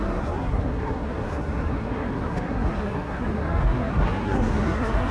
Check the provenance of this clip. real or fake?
fake